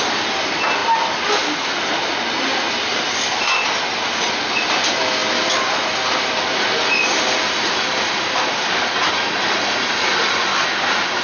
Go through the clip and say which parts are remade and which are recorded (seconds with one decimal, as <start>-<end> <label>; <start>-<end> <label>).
0.0-11.2 recorded